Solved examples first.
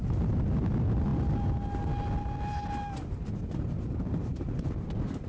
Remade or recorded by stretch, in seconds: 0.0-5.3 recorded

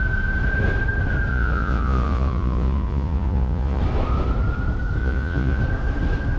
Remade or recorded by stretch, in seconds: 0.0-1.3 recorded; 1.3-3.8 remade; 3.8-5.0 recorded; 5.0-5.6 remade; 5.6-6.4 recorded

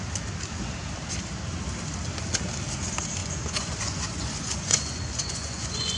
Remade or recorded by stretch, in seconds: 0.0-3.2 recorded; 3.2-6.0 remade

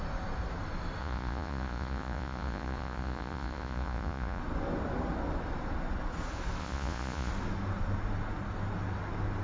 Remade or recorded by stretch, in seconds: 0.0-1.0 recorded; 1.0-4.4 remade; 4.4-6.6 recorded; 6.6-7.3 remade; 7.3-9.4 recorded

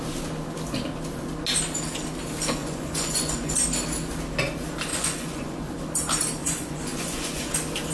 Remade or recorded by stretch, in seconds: 0.0-2.6 recorded; 2.6-3.5 remade; 3.5-4.9 recorded; 4.9-5.7 remade; 5.7-6.4 recorded; 6.4-7.5 remade; 7.5-7.9 recorded

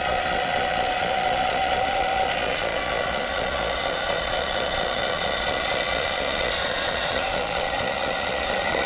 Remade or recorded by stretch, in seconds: 0.0-8.9 remade

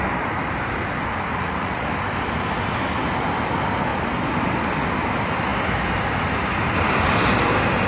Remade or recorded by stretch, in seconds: 0.0-1.3 recorded; 1.3-1.9 remade; 1.9-7.9 recorded